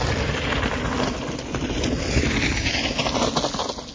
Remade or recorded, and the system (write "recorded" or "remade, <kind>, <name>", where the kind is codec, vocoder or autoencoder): recorded